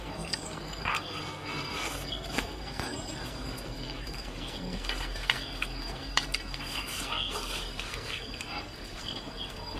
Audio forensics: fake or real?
fake